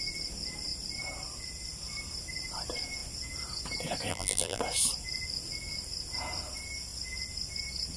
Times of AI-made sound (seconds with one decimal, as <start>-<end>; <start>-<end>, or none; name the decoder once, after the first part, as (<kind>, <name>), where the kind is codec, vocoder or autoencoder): 4.1-4.6 (vocoder, BigVGAN v2)